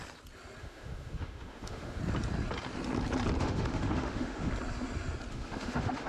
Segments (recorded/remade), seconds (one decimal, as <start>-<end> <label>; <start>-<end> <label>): 0.0-0.6 recorded; 0.6-2.0 remade; 2.0-3.4 recorded; 3.4-4.5 remade; 4.5-5.3 recorded; 5.3-6.1 remade